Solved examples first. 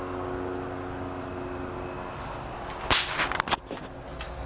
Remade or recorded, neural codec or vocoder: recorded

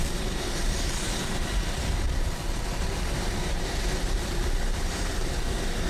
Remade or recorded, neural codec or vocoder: remade, vocoder, BigVGAN v2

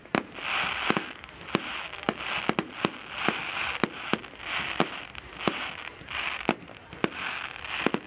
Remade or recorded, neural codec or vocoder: recorded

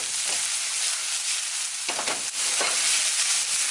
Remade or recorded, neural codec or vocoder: recorded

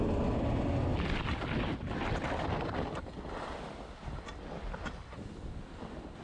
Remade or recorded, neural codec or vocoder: recorded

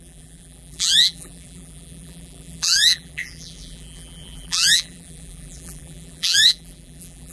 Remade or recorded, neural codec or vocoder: remade, vocoder, BigVGAN v2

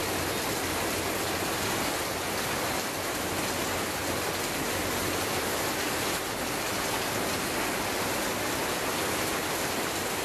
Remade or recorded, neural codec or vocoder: recorded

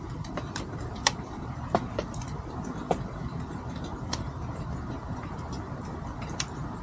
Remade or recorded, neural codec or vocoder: remade, vocoder, BigVGAN v2